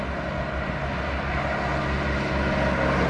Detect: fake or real real